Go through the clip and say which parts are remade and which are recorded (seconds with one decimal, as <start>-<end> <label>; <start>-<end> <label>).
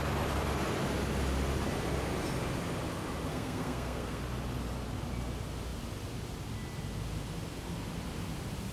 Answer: 0.0-3.3 recorded; 3.3-4.2 remade; 4.2-8.7 recorded